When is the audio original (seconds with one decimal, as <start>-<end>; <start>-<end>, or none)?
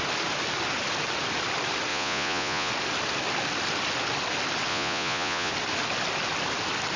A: 0.0-1.9; 2.7-4.7; 5.5-7.0